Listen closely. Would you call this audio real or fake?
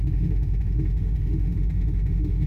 fake